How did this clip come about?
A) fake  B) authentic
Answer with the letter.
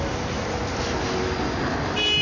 B